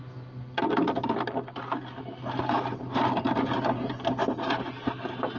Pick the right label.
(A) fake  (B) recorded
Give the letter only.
B